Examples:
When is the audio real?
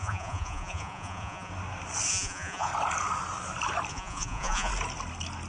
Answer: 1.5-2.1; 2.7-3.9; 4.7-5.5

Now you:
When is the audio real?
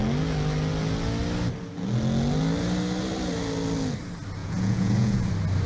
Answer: 0.0-4.4; 5.3-5.7